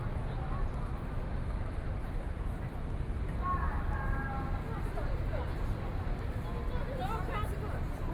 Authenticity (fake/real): real